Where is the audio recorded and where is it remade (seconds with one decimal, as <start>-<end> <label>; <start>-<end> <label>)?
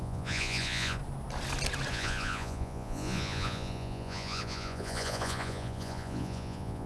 0.0-1.0 remade; 1.0-1.9 recorded; 1.9-6.9 remade